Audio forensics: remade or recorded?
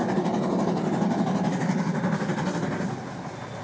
recorded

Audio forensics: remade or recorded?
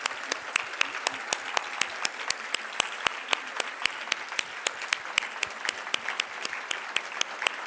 recorded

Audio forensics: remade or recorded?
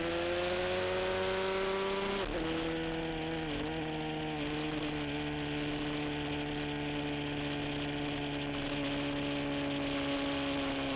recorded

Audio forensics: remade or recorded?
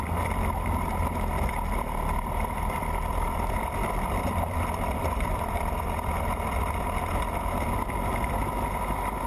remade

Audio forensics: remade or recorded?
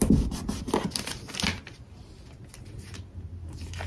recorded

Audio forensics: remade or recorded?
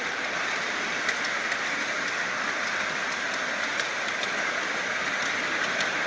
recorded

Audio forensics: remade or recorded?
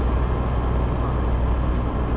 recorded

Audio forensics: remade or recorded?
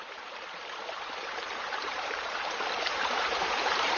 remade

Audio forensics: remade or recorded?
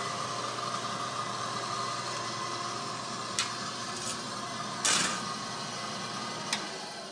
recorded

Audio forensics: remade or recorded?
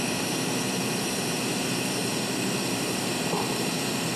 remade